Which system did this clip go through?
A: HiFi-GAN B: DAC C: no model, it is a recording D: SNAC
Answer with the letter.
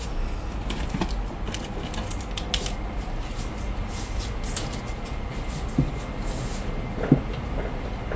C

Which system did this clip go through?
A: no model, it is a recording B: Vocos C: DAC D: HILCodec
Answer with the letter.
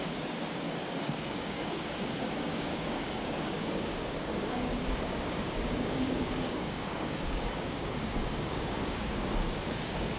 C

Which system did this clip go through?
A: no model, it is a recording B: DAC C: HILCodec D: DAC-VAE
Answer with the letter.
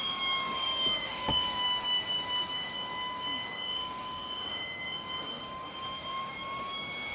B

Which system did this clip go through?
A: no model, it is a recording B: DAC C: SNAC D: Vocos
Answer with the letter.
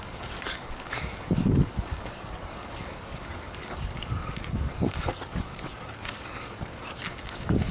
B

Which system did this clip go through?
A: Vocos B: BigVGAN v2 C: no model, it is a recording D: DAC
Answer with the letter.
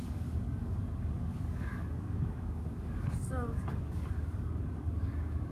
D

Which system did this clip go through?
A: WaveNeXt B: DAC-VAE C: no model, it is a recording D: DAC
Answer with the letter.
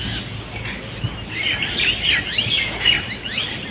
C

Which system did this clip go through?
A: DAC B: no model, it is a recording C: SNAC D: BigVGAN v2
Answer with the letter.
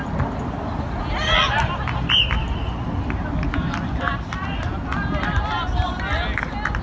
B